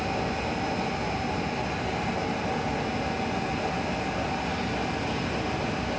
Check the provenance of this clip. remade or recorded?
recorded